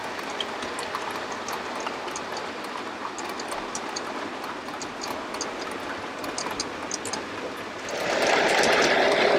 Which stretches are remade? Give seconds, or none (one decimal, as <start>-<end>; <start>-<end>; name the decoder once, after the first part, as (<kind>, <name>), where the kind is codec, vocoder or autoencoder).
none